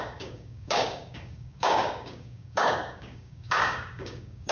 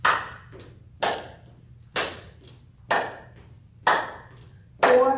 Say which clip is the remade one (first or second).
first